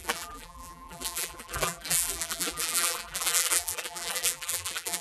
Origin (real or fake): fake